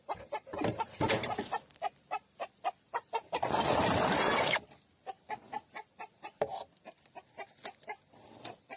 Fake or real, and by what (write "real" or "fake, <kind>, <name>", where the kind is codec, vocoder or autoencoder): fake, vocoder, BigVGAN v2